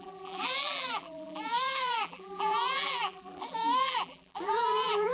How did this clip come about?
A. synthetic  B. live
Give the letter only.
A